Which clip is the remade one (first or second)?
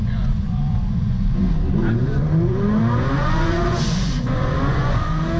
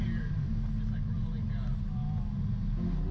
first